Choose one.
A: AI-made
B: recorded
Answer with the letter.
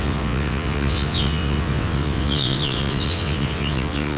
A